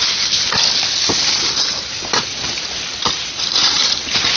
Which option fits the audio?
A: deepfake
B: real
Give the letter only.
B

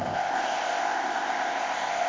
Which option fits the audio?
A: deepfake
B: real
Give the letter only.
A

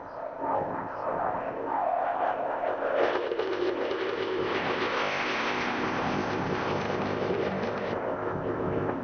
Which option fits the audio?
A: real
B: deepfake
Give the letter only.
B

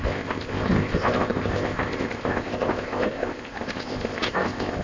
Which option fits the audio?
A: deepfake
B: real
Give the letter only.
A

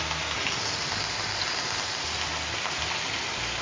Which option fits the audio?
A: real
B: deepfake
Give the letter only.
A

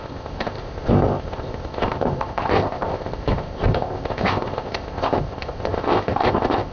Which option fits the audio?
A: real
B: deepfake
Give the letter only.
B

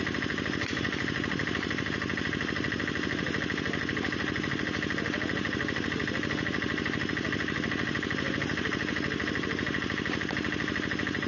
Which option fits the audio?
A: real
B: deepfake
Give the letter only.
A